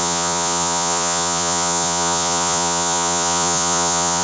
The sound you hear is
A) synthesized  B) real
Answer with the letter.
A